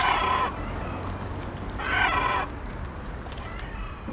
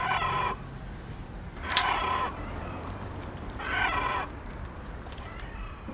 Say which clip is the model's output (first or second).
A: second